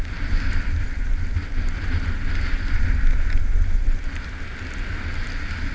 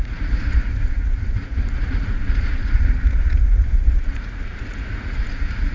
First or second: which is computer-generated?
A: second